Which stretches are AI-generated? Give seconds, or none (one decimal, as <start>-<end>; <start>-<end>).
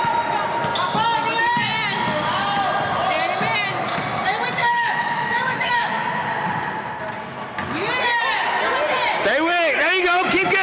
4.6-6.0